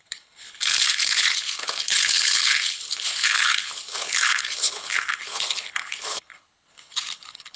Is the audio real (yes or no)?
no